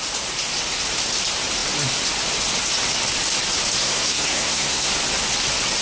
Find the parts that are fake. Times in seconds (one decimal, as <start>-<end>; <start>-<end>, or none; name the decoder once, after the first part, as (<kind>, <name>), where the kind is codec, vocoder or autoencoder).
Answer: 3.8-4.9 (codec, SNAC)